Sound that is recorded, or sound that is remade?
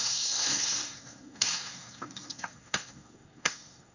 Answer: remade